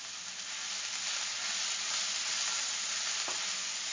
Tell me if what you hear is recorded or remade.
recorded